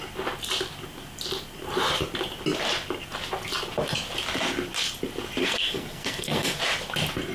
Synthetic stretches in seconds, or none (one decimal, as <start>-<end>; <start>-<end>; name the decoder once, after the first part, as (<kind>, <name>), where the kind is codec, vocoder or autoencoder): 5.4-6.6 (codec, SNAC)